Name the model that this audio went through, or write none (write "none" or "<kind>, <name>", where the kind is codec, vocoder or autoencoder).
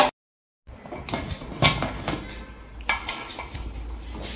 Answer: none